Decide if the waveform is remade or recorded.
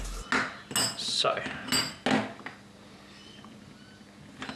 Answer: recorded